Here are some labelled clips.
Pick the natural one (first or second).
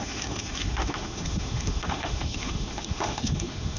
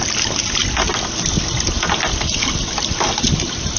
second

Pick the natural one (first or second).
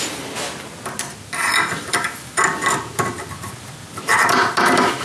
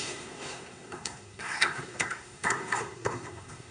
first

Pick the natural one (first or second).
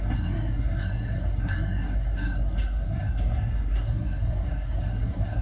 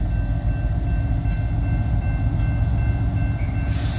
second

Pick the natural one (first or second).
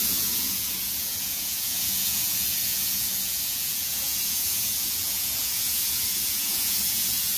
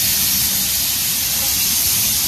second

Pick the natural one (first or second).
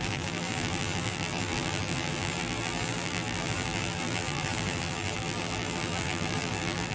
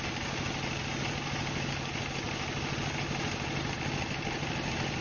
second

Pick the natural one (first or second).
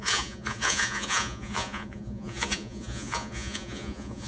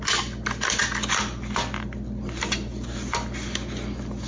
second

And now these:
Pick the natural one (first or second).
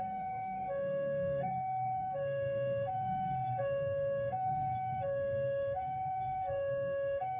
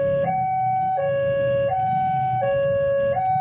second